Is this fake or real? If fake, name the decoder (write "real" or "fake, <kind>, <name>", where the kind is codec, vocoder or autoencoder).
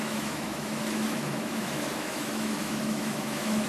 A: fake, autoencoder, DAC-VAE